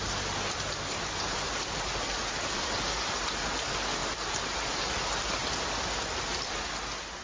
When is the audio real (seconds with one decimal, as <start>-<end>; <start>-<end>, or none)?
0.0-0.9; 2.7-7.2

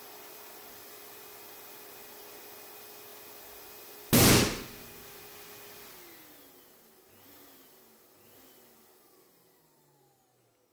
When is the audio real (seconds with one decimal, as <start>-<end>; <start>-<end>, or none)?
0.0-10.7